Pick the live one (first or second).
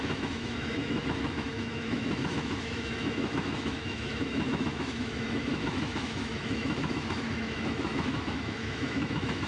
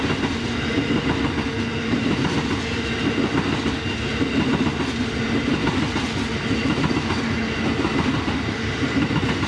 second